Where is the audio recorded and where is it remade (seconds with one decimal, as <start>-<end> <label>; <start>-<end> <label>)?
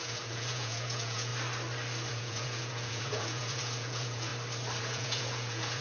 0.0-1.3 remade; 1.3-2.1 recorded; 2.1-4.3 remade; 4.3-4.8 recorded; 4.8-5.8 remade